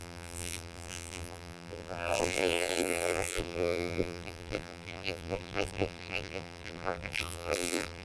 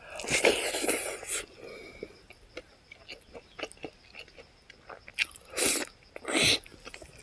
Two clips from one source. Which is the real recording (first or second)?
second